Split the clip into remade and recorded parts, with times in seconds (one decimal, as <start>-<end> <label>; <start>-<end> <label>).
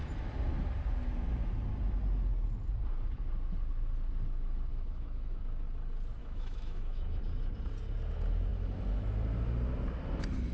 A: 0.0-4.7 recorded; 4.7-5.4 remade; 5.4-6.2 recorded; 6.2-7.2 remade; 7.2-10.5 recorded